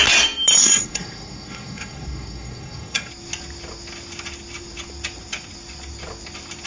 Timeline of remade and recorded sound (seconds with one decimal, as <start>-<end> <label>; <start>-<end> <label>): 0.0-0.6 recorded; 0.6-3.1 remade; 3.1-6.7 recorded